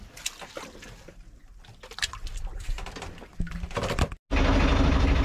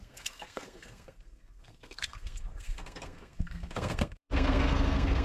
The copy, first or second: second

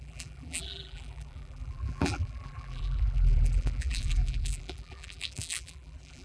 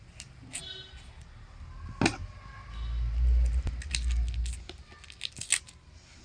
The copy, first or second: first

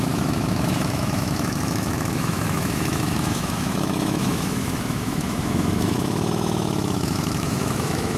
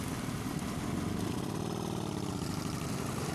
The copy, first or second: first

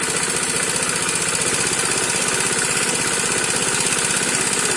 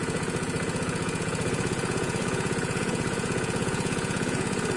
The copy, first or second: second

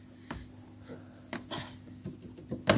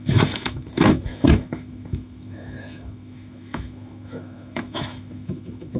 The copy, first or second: second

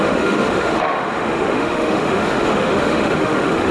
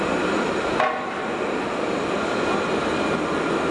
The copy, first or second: first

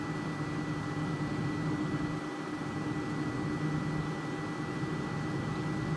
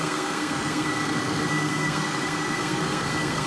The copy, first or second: second